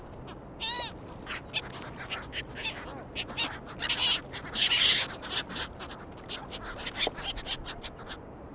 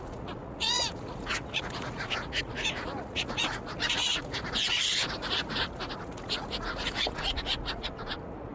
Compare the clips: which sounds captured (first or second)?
first